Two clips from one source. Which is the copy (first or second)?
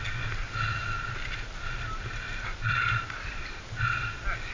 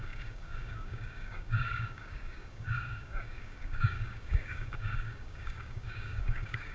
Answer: second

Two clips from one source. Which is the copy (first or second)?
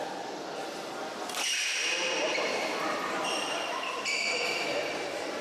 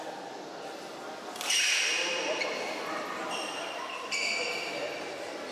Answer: first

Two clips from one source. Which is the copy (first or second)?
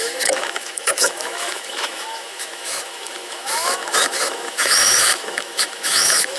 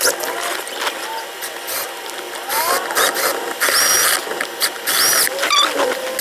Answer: first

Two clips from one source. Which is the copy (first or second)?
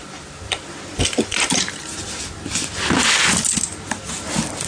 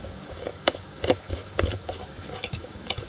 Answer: second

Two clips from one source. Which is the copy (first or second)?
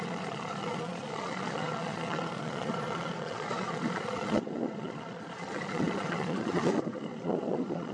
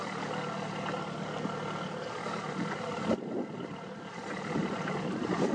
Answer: first